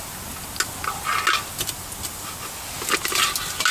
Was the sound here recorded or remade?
recorded